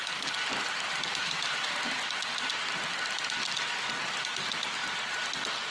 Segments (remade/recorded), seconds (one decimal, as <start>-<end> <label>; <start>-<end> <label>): 0.0-1.2 recorded; 1.2-2.0 remade; 2.0-5.7 recorded